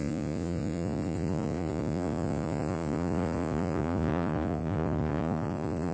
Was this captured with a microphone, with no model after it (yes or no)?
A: no